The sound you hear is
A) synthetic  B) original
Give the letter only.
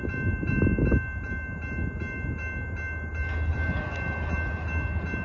B